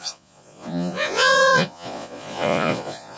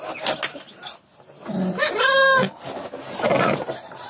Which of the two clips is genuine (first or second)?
second